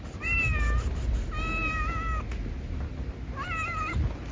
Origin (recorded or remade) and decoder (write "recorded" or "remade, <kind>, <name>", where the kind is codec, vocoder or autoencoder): recorded